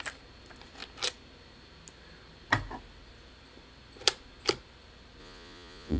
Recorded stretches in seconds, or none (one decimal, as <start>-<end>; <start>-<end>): 0.0-5.2